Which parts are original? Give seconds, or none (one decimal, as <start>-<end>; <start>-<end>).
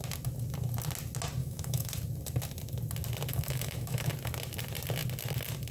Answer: 0.0-1.4; 1.9-3.3; 4.1-5.7